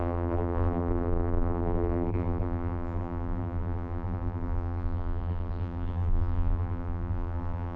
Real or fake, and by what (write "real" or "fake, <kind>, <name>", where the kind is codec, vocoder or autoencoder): fake, vocoder, BigVGAN v2